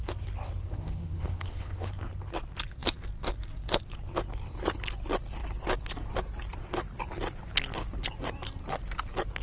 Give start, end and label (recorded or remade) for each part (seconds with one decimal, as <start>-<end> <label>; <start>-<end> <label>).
0.0-0.6 recorded; 0.6-1.9 remade; 1.9-9.4 recorded